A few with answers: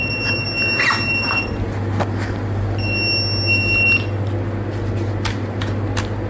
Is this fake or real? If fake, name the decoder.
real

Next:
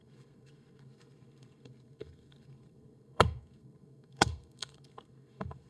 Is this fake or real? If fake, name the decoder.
fake, codec, SNAC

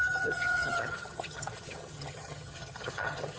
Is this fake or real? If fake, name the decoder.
fake, vocoder, HiFi-GAN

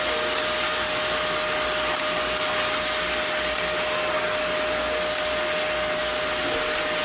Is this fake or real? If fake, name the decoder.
real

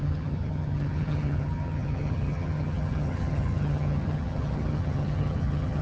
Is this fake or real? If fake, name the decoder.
fake, vocoder, HiFi-GAN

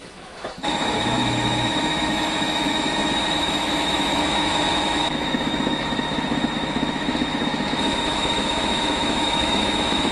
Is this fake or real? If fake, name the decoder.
fake, autoencoder, DAC-VAE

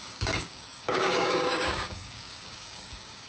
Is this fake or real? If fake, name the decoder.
fake, codec, DAC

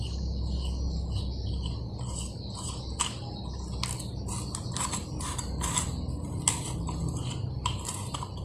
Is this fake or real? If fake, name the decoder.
real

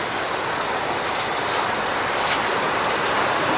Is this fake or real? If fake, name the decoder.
fake, vocoder, BigVGAN v2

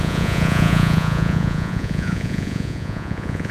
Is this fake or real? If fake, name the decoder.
fake, vocoder, Vocos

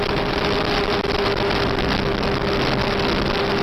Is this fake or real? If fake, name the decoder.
real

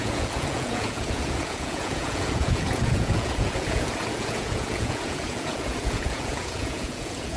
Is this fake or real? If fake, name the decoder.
fake, vocoder, Vocos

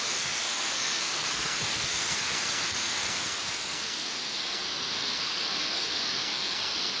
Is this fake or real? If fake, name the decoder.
fake, codec, SNAC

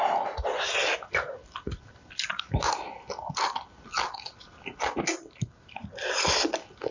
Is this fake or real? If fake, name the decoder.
real